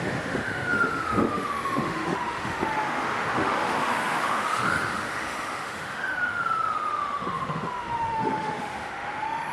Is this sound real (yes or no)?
no